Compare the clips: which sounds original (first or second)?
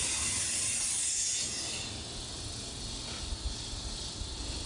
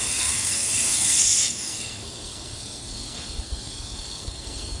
first